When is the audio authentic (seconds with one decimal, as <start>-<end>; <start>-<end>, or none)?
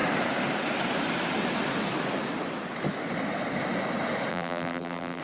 0.0-4.3